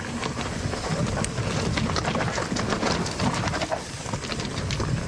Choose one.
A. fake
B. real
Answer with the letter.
B